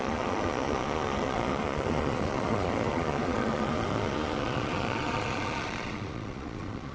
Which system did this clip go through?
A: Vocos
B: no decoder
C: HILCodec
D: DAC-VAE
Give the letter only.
A